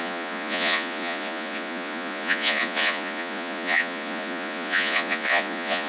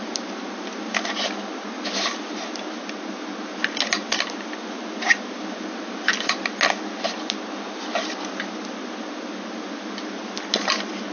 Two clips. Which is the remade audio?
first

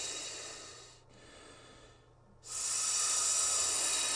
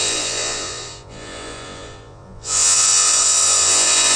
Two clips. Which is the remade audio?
second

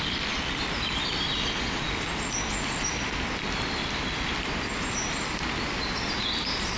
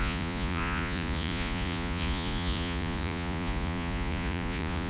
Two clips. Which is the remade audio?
second